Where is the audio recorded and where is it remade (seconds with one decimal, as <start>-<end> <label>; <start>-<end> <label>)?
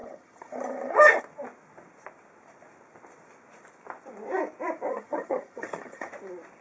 0.0-1.2 remade; 1.2-4.9 recorded; 4.9-6.1 remade; 6.1-6.6 recorded